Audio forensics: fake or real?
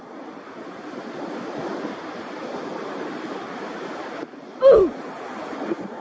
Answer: real